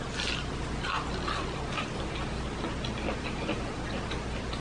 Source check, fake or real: real